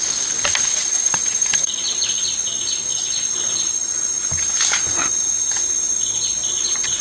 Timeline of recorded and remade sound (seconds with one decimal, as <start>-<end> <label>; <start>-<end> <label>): 0.0-0.7 recorded; 0.7-2.0 remade; 2.0-7.0 recorded